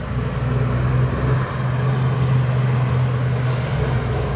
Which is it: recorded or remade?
recorded